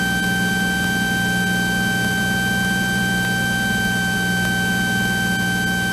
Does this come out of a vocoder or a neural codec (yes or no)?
no